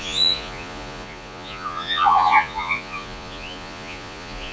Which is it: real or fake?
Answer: fake